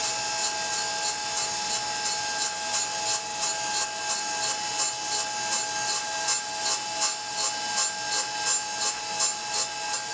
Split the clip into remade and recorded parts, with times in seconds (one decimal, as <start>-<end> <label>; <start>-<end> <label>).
0.0-10.1 recorded